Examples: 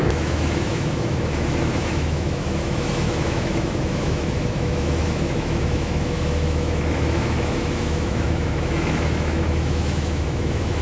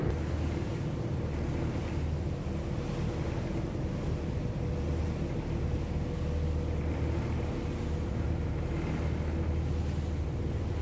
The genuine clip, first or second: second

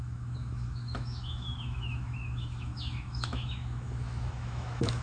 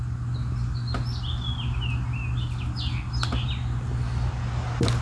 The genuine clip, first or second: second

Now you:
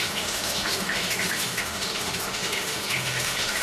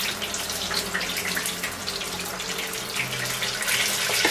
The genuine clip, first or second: second